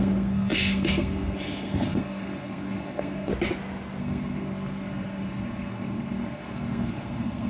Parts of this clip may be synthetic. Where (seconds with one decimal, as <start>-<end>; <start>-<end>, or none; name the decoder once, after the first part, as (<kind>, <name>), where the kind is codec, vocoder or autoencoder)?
0.0-3.3 (codec, SNAC); 4.0-7.5